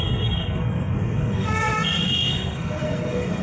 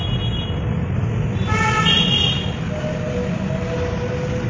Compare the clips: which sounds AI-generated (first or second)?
first